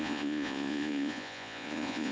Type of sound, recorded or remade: remade